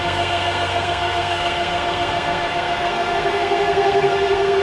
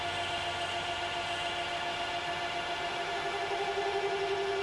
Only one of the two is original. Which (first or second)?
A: second